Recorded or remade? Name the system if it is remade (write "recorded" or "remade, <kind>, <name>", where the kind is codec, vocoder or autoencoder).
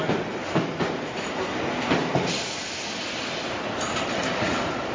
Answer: recorded